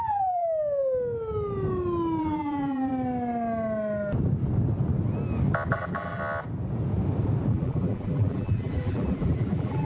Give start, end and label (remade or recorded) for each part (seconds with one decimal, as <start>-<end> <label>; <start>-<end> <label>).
0.0-0.4 remade; 0.4-2.2 recorded; 2.2-2.9 remade; 2.9-5.7 recorded; 5.7-6.2 remade; 6.2-7.5 recorded; 7.5-9.8 remade